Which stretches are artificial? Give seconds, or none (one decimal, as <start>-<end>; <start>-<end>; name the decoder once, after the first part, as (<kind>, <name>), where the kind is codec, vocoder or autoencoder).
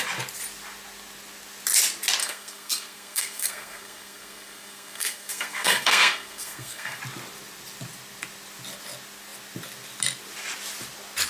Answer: 2.2-7.0 (codec, SNAC)